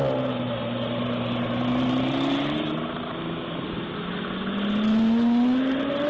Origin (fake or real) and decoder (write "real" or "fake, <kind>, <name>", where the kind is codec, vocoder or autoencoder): real